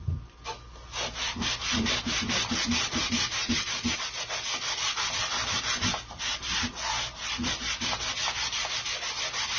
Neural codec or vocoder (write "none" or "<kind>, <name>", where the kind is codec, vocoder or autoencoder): none